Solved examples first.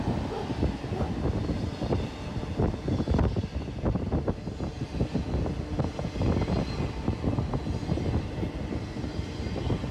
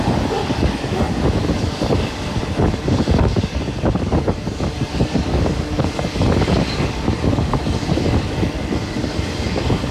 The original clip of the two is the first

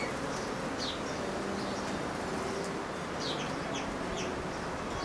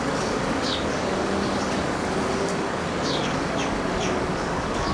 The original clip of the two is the first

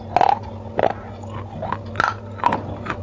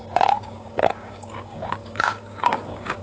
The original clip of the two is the first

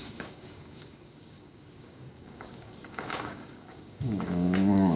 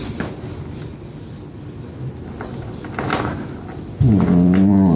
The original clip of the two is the second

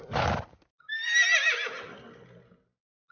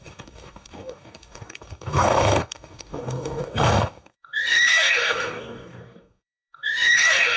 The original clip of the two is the first